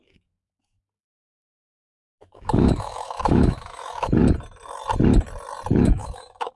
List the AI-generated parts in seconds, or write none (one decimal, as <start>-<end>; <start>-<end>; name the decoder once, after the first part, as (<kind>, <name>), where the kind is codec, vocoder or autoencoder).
0.0-4.2 (autoencoder, DAC-VAE); 5.7-6.6